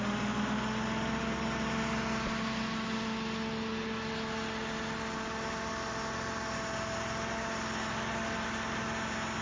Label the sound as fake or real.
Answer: real